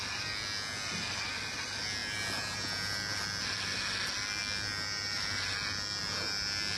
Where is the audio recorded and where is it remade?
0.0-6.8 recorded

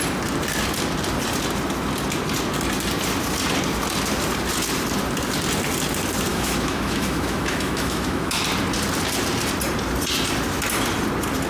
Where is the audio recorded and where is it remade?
0.0-6.3 recorded; 6.3-8.4 remade; 8.4-11.5 recorded

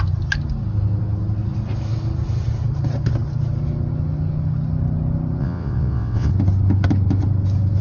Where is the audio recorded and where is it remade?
0.0-5.4 recorded; 5.4-6.3 remade; 6.3-7.8 recorded